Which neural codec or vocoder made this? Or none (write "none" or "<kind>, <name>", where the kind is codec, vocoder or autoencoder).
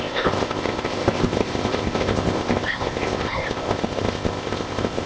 codec, ZipCodec